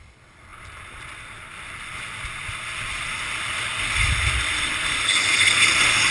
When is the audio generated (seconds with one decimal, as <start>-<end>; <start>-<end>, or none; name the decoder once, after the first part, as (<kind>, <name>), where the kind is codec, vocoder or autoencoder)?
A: none

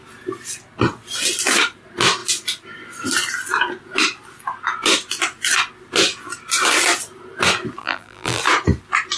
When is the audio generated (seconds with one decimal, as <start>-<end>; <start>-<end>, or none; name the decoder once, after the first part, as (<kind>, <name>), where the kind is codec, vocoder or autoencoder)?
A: 7.8-8.4 (vocoder, BigVGAN v2)

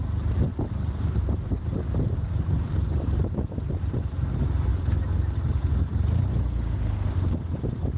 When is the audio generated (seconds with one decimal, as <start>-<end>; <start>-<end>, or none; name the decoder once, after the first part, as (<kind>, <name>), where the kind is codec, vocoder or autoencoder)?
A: 0.5-3.3 (vocoder, BigVGAN v2)

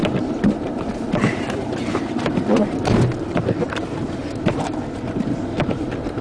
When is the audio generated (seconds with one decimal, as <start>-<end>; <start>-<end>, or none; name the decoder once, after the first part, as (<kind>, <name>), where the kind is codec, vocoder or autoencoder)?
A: 0.0-4.2 (vocoder, BigVGAN v2); 5.6-6.2

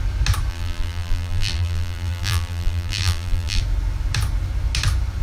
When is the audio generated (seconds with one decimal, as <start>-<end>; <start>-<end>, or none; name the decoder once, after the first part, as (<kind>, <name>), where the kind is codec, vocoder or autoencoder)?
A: 0.5-3.6 (vocoder, BigVGAN v2)

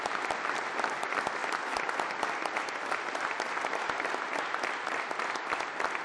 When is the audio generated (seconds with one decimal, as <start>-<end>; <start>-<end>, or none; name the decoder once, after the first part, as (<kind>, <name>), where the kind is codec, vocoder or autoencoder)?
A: 1.4-5.0 (vocoder, BigVGAN v2)